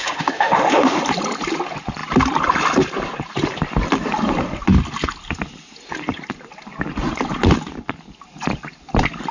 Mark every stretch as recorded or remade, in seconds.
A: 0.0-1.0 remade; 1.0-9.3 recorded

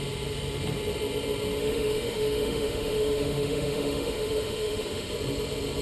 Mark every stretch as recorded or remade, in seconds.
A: 0.0-1.6 recorded; 1.6-5.1 remade; 5.1-5.8 recorded

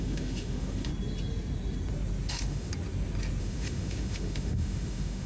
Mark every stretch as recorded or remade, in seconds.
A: 0.0-0.9 remade; 0.9-2.3 recorded; 2.3-2.7 remade; 2.7-3.4 recorded; 3.4-5.3 remade

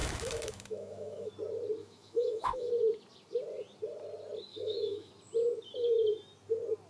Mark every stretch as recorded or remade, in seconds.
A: 0.0-1.3 remade; 1.3-1.8 recorded; 1.8-2.7 remade; 2.7-4.5 recorded; 4.5-5.1 remade; 5.1-6.9 recorded

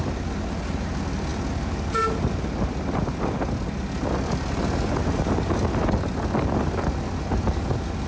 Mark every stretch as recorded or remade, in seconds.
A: 0.0-8.1 recorded

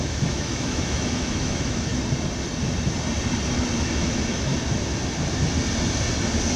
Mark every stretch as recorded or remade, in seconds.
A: 0.0-1.9 remade; 1.9-3.8 recorded; 3.8-4.5 remade; 4.5-6.6 recorded

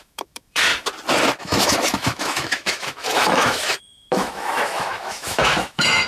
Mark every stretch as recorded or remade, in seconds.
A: 0.0-0.7 remade; 0.7-1.4 recorded; 1.4-6.1 remade

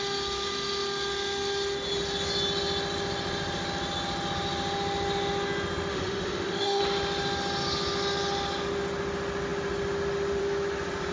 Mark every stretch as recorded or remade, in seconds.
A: 0.0-5.9 recorded; 5.9-6.8 remade; 6.8-11.1 recorded